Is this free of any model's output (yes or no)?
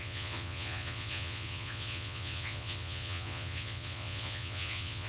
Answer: no